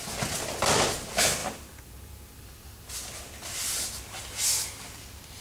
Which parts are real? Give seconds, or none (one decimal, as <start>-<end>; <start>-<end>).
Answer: 0.0-5.4